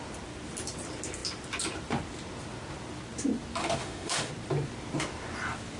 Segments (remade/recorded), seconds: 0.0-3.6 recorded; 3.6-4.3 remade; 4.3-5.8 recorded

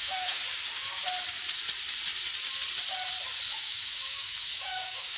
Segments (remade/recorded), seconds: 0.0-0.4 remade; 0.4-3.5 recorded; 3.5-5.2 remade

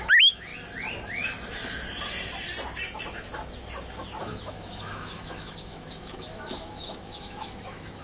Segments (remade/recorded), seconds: 0.0-0.5 remade; 0.5-4.2 recorded; 4.2-8.0 remade

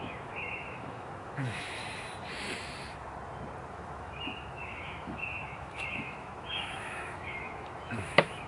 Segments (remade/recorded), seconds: 0.0-1.8 remade; 1.8-3.7 recorded; 3.7-8.5 remade

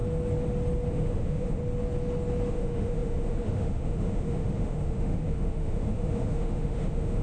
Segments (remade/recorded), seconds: 0.0-0.9 recorded; 0.9-1.6 remade; 1.6-2.5 recorded; 2.5-7.2 remade

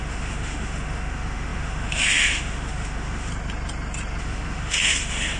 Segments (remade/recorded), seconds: 0.0-3.3 remade; 3.3-4.2 recorded; 4.2-5.4 remade

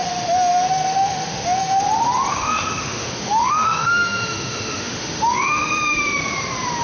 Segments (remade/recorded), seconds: 0.0-1.8 remade; 1.8-2.3 recorded; 2.3-6.2 remade; 6.2-6.8 recorded